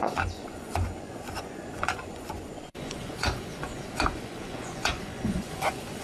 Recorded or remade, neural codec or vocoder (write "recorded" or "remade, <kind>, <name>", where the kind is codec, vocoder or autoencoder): remade, vocoder, Vocos